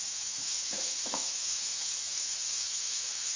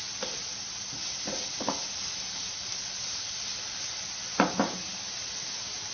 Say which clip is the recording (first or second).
second